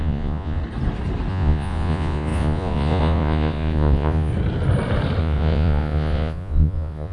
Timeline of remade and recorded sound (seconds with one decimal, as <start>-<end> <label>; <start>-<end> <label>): 0.0-0.6 remade; 0.6-1.3 recorded; 1.3-4.3 remade; 4.3-5.2 recorded; 5.2-7.1 remade